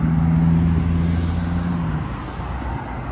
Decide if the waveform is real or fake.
real